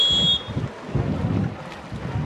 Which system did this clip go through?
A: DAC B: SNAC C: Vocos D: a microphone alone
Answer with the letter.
D